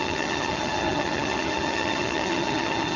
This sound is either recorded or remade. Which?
remade